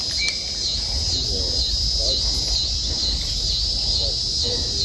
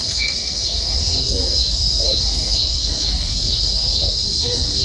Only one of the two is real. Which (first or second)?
first